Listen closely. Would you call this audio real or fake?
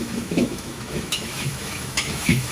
fake